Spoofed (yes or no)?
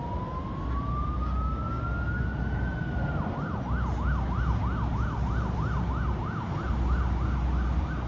no